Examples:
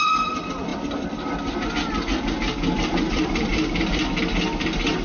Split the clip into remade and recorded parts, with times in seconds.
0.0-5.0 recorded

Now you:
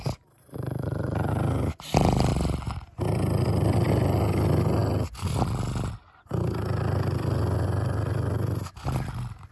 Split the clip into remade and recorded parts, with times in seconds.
0.0-9.5 recorded

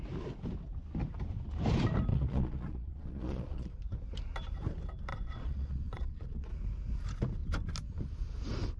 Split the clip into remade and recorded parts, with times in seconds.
0.0-2.1 recorded; 2.1-3.8 remade; 3.8-5.1 recorded; 5.1-6.5 remade; 6.5-8.8 recorded

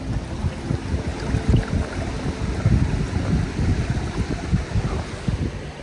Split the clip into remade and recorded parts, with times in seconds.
0.0-5.8 recorded